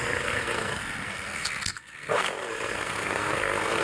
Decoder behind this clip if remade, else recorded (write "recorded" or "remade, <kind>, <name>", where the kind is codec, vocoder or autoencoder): remade, codec, SNAC